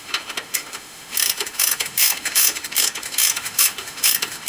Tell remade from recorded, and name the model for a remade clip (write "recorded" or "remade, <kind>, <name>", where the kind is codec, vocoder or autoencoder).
remade, autoencoder, DAC-VAE